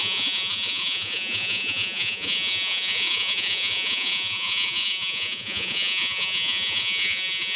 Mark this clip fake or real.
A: fake